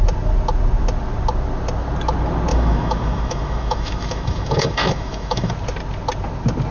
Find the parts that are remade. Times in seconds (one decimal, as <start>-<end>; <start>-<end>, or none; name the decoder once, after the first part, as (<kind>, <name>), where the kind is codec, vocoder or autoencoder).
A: 2.5-5.5 (autoencoder, DAC-VAE)